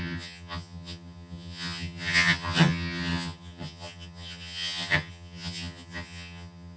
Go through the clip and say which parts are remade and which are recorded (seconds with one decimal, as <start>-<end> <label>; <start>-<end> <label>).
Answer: 0.0-6.8 remade